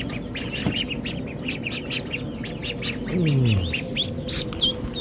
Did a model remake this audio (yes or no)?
no